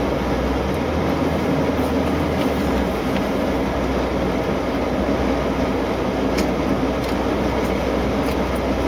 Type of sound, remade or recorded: recorded